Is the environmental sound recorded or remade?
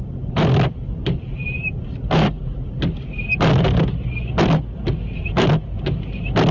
recorded